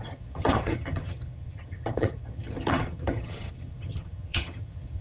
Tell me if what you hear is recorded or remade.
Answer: remade